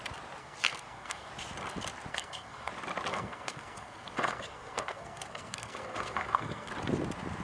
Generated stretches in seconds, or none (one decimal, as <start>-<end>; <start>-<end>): 0.4-1.3; 2.1-2.7; 3.1-6.7

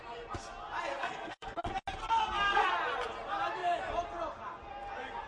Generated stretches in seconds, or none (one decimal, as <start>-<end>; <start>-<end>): 0.9-1.6; 2.0-2.7

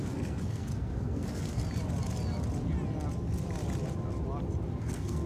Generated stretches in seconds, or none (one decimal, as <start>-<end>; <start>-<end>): 0.0-1.6; 4.8-5.3

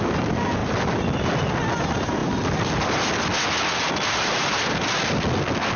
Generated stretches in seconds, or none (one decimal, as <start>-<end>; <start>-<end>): none

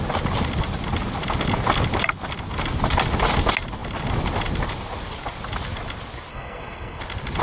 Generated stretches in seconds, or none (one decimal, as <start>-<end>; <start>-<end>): 6.3-7.0

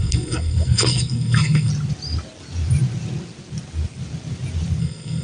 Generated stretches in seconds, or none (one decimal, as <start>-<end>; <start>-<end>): 0.0-1.7; 4.8-5.2

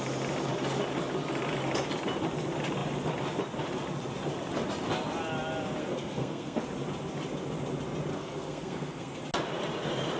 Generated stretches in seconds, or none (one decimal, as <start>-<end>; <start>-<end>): 5.8-6.6; 8.1-9.2